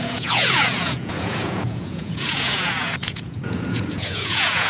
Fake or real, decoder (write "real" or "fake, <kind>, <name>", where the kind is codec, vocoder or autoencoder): fake, vocoder, Vocos